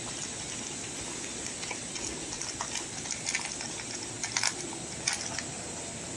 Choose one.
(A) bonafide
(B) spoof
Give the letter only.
A